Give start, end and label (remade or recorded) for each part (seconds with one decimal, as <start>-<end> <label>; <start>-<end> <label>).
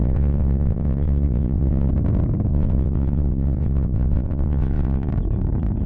0.0-1.9 remade; 1.9-2.5 recorded; 2.5-5.1 remade; 5.1-5.9 recorded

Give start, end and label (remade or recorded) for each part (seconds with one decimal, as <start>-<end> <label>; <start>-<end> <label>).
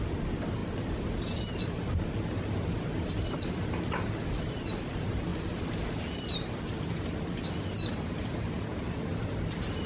0.0-5.3 recorded; 5.3-8.5 remade; 8.5-9.9 recorded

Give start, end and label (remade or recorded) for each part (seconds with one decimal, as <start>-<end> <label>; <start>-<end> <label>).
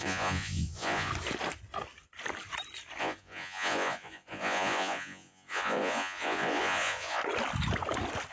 0.0-1.1 remade; 1.1-3.0 recorded; 3.0-7.2 remade; 7.2-8.3 recorded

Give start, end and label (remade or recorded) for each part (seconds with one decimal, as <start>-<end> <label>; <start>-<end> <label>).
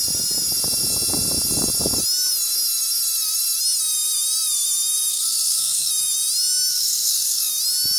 0.0-5.1 recorded; 5.1-5.9 remade; 5.9-6.7 recorded; 6.7-7.5 remade; 7.5-8.0 recorded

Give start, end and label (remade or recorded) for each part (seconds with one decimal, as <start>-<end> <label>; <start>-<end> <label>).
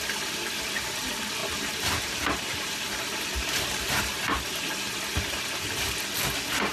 0.0-6.7 recorded